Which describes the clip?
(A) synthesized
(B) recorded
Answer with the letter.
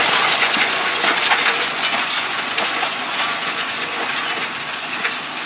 A